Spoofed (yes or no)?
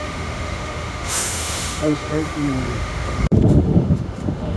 yes